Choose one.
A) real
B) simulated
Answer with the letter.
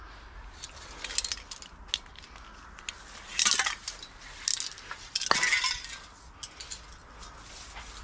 A